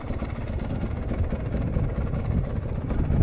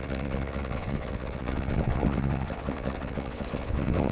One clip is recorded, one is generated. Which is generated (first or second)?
second